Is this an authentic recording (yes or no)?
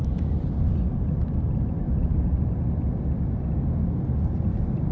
yes